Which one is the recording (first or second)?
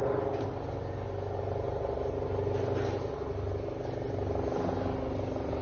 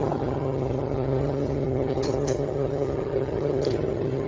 first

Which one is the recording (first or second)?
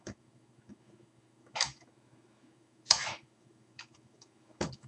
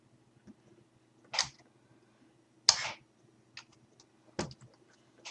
second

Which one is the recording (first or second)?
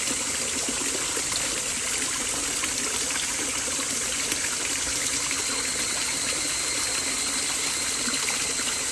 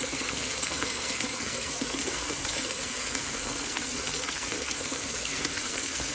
first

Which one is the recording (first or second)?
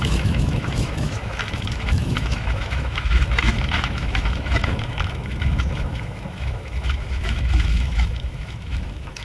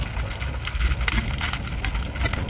second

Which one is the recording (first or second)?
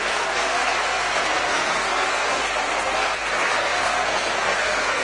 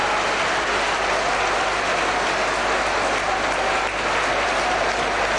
second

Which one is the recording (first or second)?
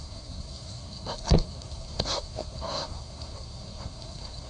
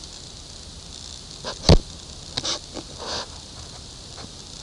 second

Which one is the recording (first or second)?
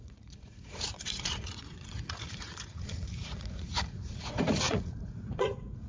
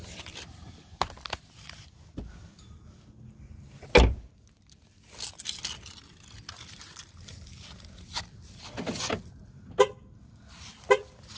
second